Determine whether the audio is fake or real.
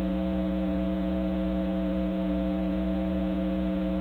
fake